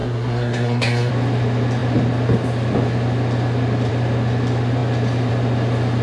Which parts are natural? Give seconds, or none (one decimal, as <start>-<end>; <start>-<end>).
1.1-6.0